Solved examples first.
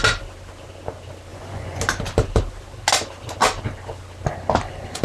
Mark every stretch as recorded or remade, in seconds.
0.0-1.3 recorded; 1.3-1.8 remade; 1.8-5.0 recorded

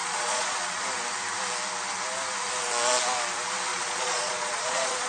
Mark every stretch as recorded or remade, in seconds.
0.0-0.8 remade; 0.8-3.7 recorded; 3.7-5.1 remade